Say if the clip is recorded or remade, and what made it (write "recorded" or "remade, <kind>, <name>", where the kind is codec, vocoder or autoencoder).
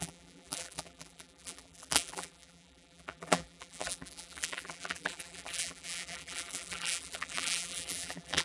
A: remade, vocoder, BigVGAN v2